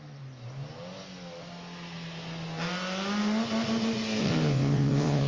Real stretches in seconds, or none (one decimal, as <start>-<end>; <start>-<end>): 0.0-4.2